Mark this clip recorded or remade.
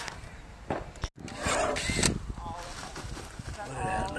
recorded